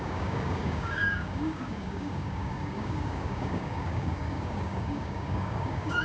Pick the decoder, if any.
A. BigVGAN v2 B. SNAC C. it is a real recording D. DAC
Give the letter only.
D